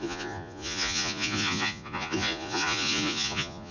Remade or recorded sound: remade